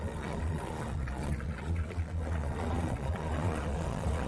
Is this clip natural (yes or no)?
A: no